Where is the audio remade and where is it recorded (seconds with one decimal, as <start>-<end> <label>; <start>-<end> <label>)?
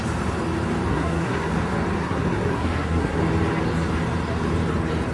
0.0-0.9 recorded; 0.9-1.5 remade; 1.5-2.0 recorded; 2.0-3.2 remade; 3.2-5.1 recorded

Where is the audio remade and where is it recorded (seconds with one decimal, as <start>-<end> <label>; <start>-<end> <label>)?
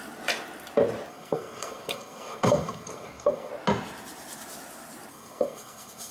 0.0-1.1 recorded; 1.1-3.5 remade; 3.5-5.1 recorded; 5.1-6.1 remade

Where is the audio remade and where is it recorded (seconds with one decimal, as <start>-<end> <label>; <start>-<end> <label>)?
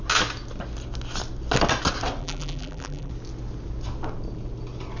0.0-2.2 recorded; 2.2-3.1 remade; 3.1-5.0 recorded